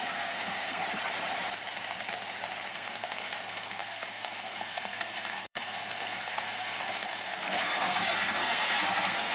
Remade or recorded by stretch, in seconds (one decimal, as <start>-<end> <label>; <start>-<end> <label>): 0.0-0.8 remade; 0.8-2.7 recorded; 2.7-9.3 remade